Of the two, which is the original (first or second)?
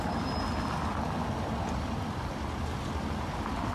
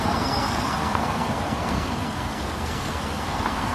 first